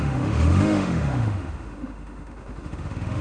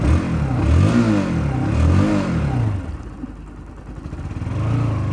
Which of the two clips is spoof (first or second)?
first